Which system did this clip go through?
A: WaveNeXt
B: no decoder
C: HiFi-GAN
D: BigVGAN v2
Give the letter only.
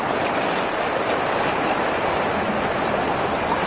B